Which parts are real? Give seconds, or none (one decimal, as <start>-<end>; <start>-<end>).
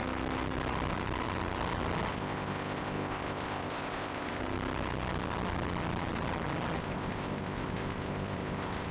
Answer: 0.0-2.1; 4.4-6.8